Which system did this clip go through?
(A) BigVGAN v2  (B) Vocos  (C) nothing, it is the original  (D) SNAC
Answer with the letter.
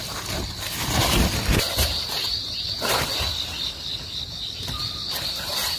C